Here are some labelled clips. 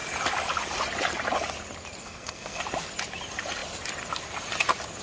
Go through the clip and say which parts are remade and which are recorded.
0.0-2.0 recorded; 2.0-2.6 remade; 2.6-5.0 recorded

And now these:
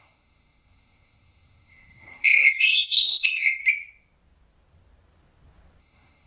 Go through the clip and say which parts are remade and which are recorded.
0.0-3.6 remade; 3.6-5.8 recorded; 5.8-6.3 remade

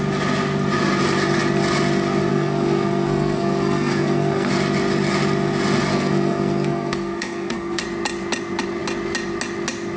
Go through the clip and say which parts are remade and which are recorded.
0.0-2.3 recorded; 2.3-4.5 remade; 4.5-5.9 recorded; 5.9-7.8 remade; 7.8-10.0 recorded

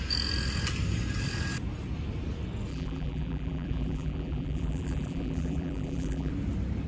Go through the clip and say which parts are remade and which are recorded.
0.0-2.7 recorded; 2.7-6.3 remade; 6.3-6.9 recorded

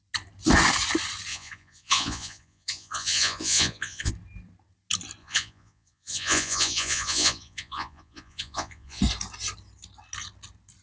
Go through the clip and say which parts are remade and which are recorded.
0.0-1.3 recorded; 1.3-4.1 remade; 4.1-5.2 recorded; 5.2-9.0 remade; 9.0-10.8 recorded